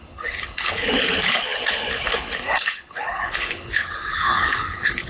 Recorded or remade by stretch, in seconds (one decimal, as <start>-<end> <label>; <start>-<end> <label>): 0.0-5.1 remade